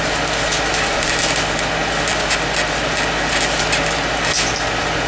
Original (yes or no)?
yes